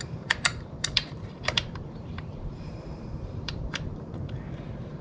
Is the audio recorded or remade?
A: remade